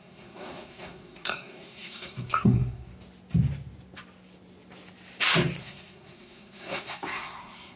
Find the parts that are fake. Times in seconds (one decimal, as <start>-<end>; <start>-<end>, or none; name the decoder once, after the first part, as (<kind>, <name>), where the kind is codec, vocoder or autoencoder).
0.0-2.9 (codec, SNAC); 5.6-7.8